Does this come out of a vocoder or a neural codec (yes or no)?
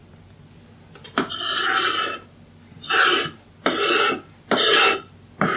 no